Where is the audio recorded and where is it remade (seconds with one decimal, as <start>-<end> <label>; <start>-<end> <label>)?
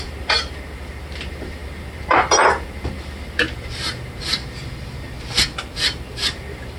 0.0-4.4 remade; 4.4-6.0 recorded; 6.0-6.8 remade